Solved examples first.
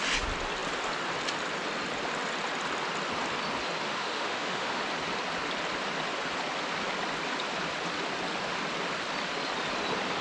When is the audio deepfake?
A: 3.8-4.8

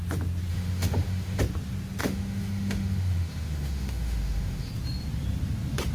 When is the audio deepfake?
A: 0.5-1.4; 2.0-4.7